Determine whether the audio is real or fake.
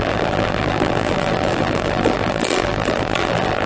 fake